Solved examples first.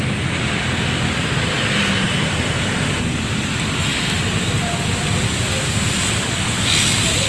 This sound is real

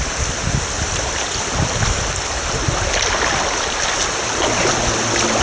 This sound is real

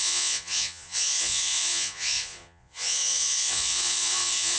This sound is fake